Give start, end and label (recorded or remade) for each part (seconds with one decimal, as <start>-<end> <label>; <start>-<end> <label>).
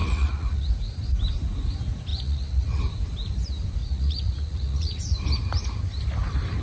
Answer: 0.0-0.7 remade; 0.7-2.1 recorded; 2.1-2.8 remade; 2.8-3.8 recorded; 3.8-5.0 remade; 5.0-6.6 recorded